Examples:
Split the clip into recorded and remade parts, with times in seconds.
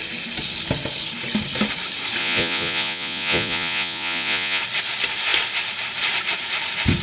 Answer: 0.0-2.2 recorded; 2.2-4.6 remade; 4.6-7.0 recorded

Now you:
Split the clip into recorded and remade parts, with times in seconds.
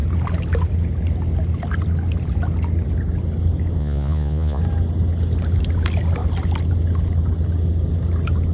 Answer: 0.0-3.8 recorded; 3.8-4.6 remade; 4.6-8.5 recorded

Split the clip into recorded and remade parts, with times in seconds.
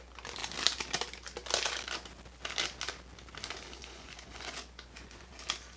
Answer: 0.0-3.8 recorded; 3.8-5.3 remade; 5.3-5.8 recorded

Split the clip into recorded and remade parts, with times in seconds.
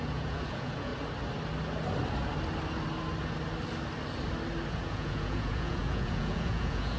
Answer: 0.0-0.9 remade; 0.9-4.7 recorded; 4.7-7.0 remade